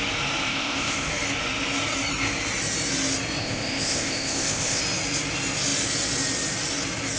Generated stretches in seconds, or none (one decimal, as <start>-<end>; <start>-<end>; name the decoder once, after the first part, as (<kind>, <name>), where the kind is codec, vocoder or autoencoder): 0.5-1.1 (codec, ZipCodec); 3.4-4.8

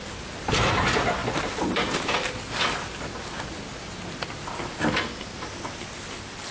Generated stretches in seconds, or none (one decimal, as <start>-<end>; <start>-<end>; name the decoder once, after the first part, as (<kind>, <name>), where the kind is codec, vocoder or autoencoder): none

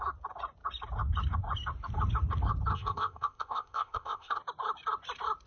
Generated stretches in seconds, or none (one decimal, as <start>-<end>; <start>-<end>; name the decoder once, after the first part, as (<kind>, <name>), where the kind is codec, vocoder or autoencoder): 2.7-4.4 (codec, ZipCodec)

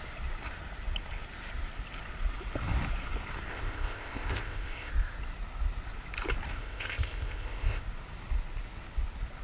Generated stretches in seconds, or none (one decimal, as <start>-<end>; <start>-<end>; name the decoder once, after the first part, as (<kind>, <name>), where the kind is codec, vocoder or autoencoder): 3.5-4.9 (codec, ZipCodec); 6.5-7.8

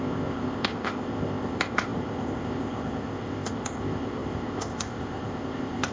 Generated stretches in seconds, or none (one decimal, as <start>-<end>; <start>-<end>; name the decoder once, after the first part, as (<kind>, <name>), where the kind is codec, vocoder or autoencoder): 0.0-5.9 (codec, ZipCodec)